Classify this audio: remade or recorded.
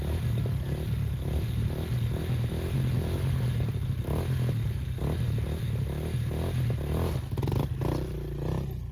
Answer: recorded